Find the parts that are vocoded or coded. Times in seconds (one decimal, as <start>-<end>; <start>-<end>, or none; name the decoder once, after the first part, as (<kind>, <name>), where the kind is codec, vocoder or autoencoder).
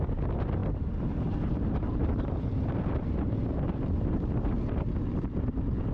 0.6-4.1 (vocoder, BigVGAN v2)